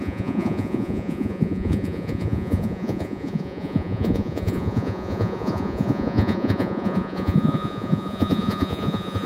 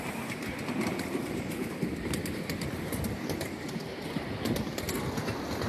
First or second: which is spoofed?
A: first